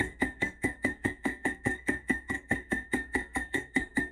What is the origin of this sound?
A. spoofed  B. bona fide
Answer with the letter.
A